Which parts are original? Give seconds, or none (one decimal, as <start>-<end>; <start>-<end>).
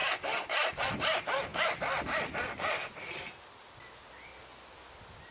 0.0-5.3